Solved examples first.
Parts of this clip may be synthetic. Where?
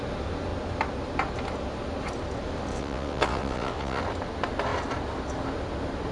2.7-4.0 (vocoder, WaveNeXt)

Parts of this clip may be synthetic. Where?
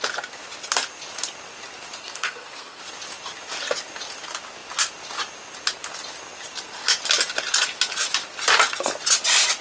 2.0-2.8 (codec, SNAC)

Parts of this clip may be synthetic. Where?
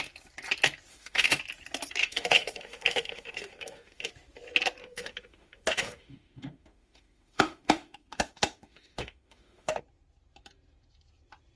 0.9-1.4 (autoencoder, DAC-VAE); 2.0-4.1; 4.8-9.8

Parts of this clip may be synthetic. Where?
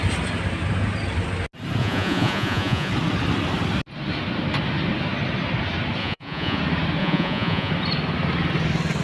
1.8-2.9 (vocoder, Vocos); 6.0-6.6; 7.0-7.7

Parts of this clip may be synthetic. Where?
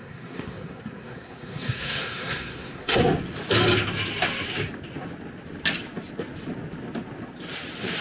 0.0-3.0 (codec, SNAC)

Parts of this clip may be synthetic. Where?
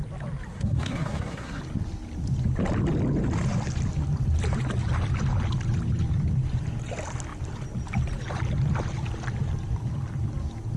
0.5-1.6 (codec, SNAC)